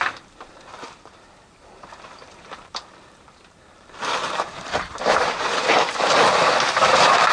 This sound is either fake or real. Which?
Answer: fake